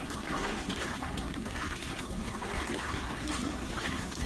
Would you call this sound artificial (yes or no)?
yes